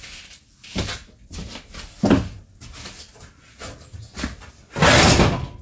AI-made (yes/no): no